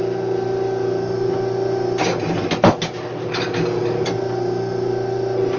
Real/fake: real